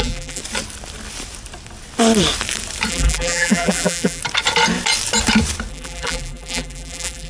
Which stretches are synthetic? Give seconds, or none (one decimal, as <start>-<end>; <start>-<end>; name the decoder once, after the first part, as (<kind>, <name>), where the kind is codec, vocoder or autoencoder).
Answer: 0.0-0.4 (vocoder, BigVGAN v2); 2.9-4.2; 5.7-7.3

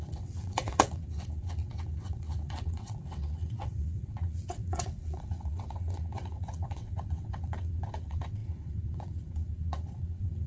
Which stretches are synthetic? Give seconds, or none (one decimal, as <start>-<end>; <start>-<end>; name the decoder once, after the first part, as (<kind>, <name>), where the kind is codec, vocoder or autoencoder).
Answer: 0.0-10.5 (vocoder, WaveNeXt)

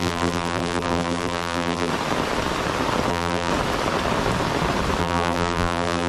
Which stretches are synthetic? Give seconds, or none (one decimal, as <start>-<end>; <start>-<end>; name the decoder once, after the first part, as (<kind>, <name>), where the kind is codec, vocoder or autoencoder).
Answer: 0.0-1.9 (vocoder, BigVGAN v2); 3.1-3.5; 5.0-6.1

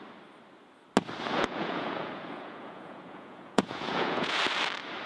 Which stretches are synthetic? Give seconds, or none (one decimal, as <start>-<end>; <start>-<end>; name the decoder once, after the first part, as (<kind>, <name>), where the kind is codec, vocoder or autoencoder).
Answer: 1.3-4.4 (vocoder, Vocos)

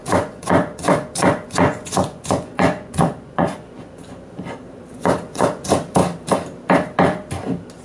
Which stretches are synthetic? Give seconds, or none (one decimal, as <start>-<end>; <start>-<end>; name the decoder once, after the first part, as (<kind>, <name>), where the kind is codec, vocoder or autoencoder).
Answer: 0.0-4.4 (vocoder, Vocos); 4.9-5.7

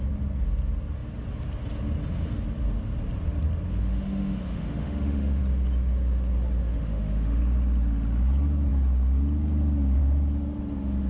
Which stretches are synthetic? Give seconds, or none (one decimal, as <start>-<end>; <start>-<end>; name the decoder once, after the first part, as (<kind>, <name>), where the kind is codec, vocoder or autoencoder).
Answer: 3.8-5.4 (autoencoder, DAC-VAE); 6.7-7.4

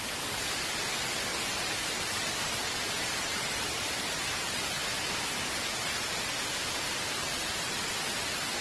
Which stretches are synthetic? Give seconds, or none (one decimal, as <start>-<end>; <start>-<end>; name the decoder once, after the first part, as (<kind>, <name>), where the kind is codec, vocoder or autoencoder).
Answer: 1.3-2.4 (vocoder, BigVGAN v2); 3.3-4.3

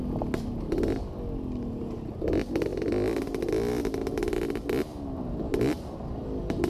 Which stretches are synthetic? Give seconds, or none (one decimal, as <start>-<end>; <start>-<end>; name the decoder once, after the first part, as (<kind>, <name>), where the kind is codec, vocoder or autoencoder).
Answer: 4.9-6.7 (vocoder, BigVGAN v2)